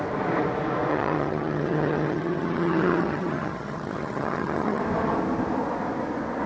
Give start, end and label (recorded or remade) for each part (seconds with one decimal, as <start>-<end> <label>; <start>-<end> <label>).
0.0-0.9 recorded; 0.9-4.8 remade; 4.8-6.5 recorded